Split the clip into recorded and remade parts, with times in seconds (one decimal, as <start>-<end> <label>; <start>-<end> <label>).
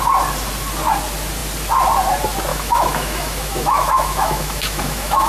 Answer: 0.0-2.5 recorded; 2.5-5.3 remade